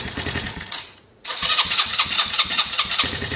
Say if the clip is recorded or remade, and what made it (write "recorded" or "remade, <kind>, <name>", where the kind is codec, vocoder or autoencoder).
remade, vocoder, Vocos